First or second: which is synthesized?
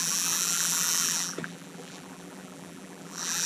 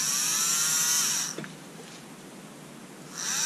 first